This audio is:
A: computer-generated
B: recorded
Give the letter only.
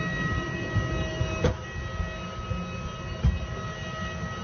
B